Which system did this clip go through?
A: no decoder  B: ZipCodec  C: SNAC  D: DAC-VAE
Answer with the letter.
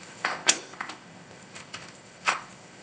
B